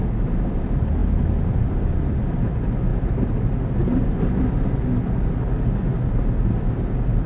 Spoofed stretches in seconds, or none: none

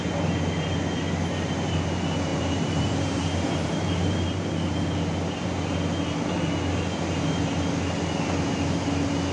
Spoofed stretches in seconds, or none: 2.3-4.5 (vocoder, BigVGAN v2)

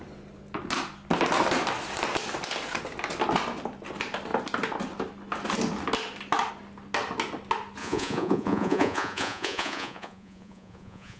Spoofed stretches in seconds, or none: 7.8-11.2 (vocoder, Vocos)

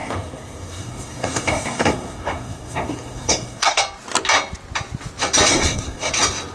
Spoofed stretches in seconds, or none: 0.0-3.8 (codec, SNAC); 5.5-6.1

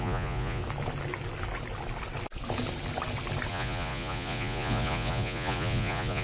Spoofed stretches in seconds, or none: 0.0-0.6 (vocoder, Vocos); 3.5-6.2

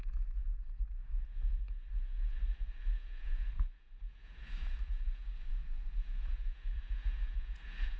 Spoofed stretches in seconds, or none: 0.0-8.0 (vocoder, Vocos)